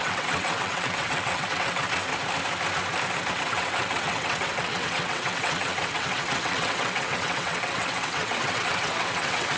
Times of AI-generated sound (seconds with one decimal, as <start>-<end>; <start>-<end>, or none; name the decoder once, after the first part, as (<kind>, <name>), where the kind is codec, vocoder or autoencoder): 0.0-2.1 (vocoder, WaveNeXt); 3.3-9.6